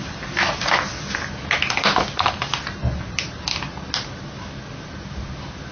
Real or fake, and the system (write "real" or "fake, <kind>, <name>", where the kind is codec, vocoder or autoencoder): real